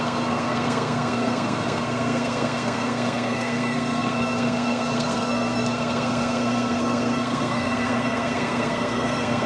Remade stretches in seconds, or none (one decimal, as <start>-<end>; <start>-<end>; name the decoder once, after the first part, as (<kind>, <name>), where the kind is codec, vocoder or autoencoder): 0.0-9.5 (codec, SNAC)